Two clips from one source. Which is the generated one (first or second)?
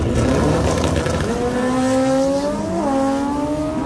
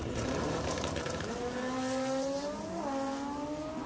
second